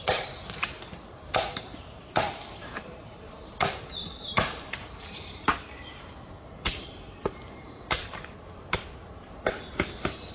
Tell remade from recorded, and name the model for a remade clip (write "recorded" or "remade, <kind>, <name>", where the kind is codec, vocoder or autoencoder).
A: remade, vocoder, BigVGAN v2